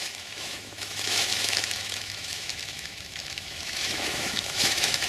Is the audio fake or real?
fake